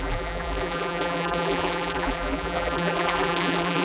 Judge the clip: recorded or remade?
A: remade